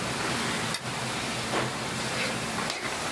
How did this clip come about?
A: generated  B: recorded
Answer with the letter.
B